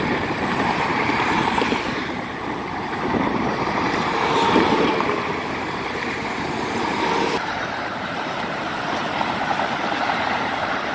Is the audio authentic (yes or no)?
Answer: no